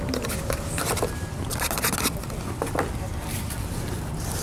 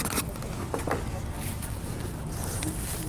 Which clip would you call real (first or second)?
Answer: second